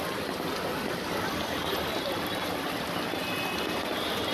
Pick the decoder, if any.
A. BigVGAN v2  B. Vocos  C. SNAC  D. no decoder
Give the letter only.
D